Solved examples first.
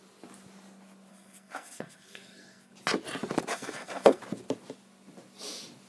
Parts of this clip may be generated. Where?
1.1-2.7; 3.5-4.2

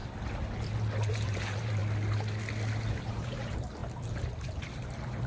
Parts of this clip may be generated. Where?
1.1-1.8; 2.9-5.3

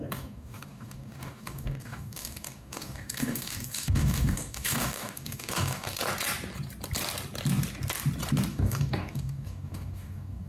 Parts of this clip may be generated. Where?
0.0-6.0; 8.5-10.5

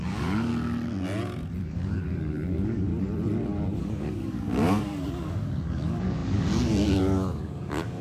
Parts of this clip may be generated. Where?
0.0-0.5; 1.6-2.9; 3.8-8.0

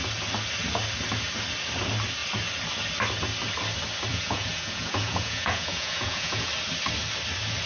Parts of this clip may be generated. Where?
4.1-6.5

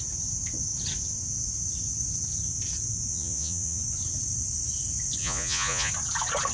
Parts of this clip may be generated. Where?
3.1-3.8; 5.2-5.9

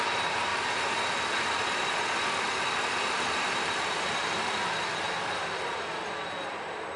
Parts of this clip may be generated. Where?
0.0-0.5; 3.3-4.9; 6.5-7.0